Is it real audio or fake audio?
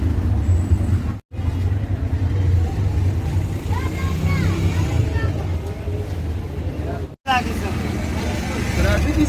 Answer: real